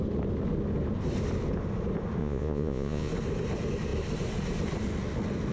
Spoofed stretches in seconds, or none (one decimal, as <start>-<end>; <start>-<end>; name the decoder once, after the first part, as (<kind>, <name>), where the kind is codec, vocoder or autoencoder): 2.2-3.1 (vocoder, Vocos)